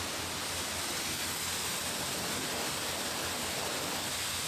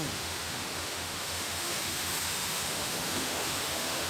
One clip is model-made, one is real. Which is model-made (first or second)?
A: second